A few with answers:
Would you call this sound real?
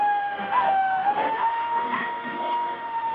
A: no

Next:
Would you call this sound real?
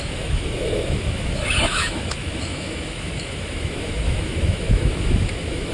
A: no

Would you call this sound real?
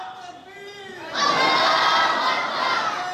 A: yes